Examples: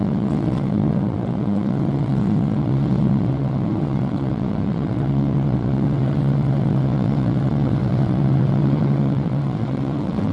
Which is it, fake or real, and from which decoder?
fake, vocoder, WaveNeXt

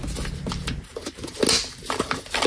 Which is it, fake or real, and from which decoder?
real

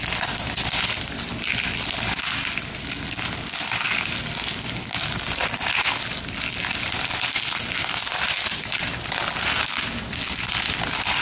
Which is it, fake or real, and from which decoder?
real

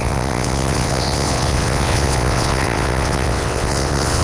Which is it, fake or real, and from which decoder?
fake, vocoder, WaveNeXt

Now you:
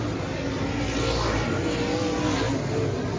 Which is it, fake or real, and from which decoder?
real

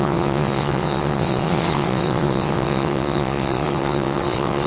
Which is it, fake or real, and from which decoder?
fake, vocoder, WaveNeXt